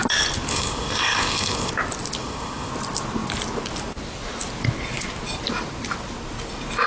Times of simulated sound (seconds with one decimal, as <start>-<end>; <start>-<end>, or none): 0.5-1.7; 2.2-2.7